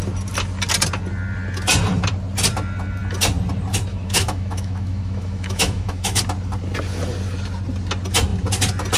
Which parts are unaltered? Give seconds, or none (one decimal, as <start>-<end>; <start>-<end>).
0.0-3.9; 6.2-9.0